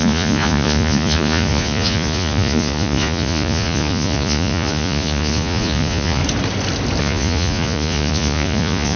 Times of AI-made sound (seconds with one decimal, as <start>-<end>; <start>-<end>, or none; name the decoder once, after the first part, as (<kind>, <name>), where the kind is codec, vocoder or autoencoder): 0.0-6.2 (vocoder, Vocos); 7.0-9.0